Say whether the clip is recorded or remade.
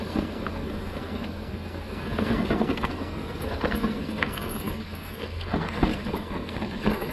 remade